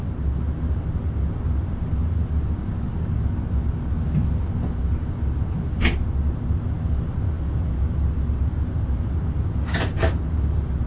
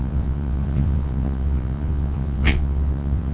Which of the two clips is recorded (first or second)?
first